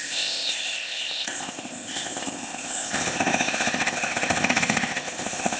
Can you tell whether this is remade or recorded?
remade